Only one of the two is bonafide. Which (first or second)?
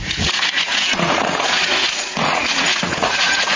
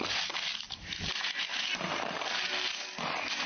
second